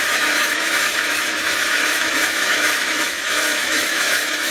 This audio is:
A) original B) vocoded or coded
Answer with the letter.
B